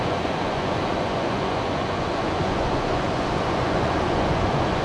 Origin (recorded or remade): remade